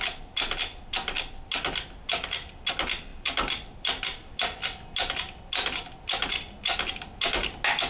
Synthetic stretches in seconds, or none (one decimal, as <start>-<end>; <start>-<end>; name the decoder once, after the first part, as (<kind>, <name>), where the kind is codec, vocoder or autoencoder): none